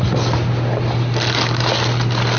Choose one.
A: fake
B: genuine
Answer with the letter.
B